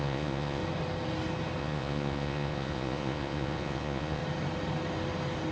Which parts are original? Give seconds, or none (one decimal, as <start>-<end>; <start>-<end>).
0.6-1.6; 4.2-5.5